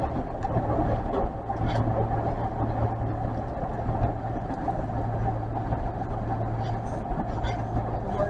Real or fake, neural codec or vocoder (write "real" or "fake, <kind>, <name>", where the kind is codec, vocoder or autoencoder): real